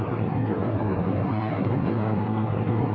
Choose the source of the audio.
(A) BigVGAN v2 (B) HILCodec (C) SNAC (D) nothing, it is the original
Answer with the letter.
C